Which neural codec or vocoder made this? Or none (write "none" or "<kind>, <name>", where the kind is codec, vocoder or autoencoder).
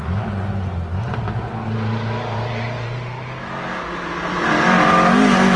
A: none